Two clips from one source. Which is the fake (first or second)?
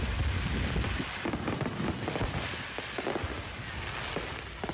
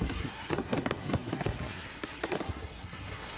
second